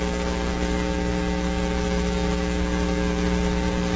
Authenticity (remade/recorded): remade